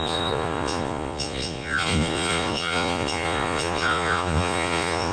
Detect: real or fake fake